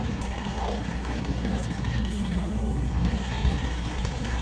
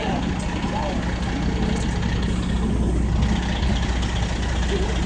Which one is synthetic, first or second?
first